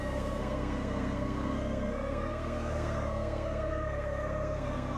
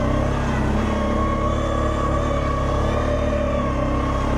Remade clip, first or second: first